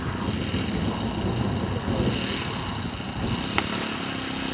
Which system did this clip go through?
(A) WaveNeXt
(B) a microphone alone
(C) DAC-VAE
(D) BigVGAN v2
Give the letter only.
B